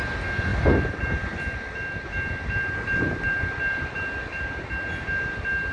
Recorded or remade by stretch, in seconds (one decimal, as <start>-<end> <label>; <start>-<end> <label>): 0.0-5.7 recorded

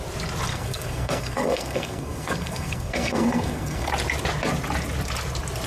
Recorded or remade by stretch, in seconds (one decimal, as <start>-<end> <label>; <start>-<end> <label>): 0.0-0.5 recorded; 0.5-3.9 remade; 3.9-5.7 recorded

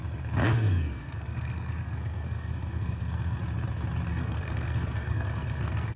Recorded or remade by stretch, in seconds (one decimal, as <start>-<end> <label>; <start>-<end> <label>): 0.0-0.5 recorded; 0.5-3.4 remade; 3.4-4.1 recorded; 4.1-6.0 remade